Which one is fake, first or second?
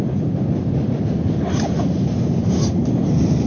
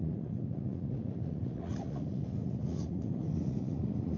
second